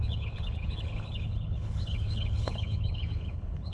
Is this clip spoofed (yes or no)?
yes